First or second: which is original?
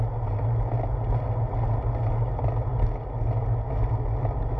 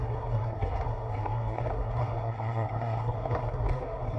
first